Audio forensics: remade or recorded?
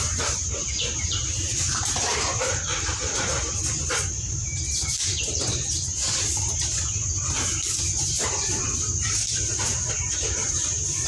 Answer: remade